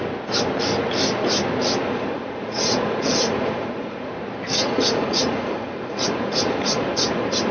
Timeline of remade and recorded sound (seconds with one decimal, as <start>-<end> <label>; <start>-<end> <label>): 0.0-1.8 recorded; 1.8-4.1 remade; 4.1-4.6 recorded; 4.6-7.5 remade

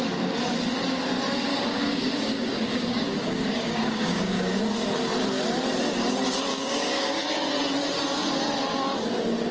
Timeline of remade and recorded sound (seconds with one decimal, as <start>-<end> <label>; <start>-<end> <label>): 0.0-1.5 recorded; 1.5-4.6 remade; 4.6-6.5 recorded; 6.5-7.2 remade; 7.2-9.5 recorded